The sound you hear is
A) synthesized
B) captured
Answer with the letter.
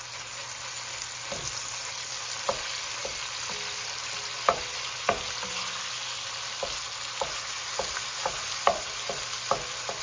B